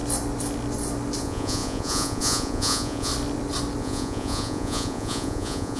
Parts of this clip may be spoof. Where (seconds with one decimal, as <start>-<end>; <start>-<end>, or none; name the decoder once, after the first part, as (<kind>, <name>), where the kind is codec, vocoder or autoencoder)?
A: 1.2-3.1 (vocoder, Vocos); 3.8-5.8